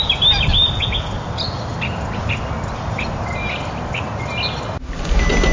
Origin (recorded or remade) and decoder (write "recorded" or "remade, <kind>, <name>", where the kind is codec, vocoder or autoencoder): recorded